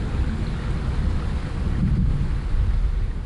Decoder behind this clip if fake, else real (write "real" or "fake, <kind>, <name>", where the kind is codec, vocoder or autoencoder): real